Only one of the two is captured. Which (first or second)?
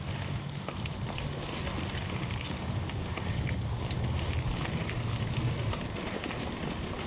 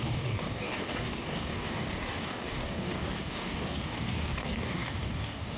first